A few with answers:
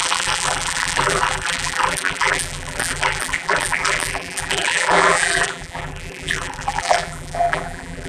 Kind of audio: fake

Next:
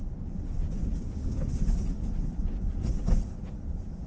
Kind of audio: real